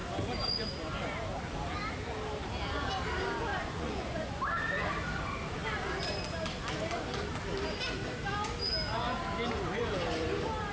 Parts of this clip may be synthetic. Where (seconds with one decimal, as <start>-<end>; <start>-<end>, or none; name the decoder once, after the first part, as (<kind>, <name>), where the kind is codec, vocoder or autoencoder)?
3.5-4.4 (vocoder, Vocos)